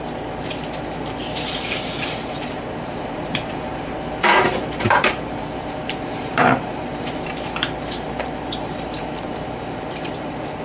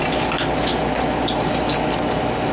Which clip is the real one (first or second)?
second